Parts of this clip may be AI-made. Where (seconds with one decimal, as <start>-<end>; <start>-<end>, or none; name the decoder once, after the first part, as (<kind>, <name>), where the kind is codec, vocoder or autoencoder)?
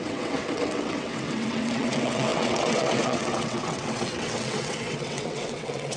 0.0-6.0 (vocoder, WaveNeXt)